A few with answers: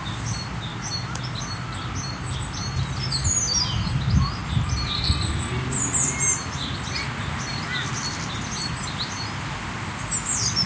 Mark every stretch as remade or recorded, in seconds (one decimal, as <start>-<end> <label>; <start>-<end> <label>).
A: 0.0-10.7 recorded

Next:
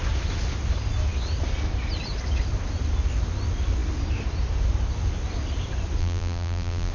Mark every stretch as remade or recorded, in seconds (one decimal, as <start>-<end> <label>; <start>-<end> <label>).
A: 0.0-6.0 recorded; 6.0-6.9 remade

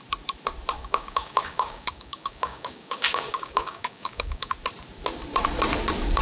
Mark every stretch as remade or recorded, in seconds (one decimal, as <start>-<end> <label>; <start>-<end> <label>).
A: 0.0-0.8 recorded; 0.8-4.5 remade; 4.5-6.2 recorded

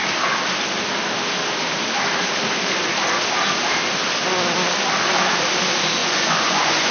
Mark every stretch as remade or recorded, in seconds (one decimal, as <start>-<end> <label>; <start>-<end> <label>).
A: 0.0-6.0 recorded; 6.0-6.9 remade

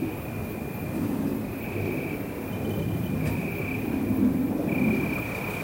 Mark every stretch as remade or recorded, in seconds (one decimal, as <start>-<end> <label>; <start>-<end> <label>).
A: 0.0-5.6 recorded

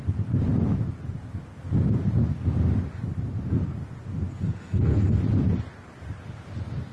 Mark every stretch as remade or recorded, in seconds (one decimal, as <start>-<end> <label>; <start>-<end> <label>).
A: 0.0-4.3 recorded; 4.3-5.2 remade; 5.2-6.9 recorded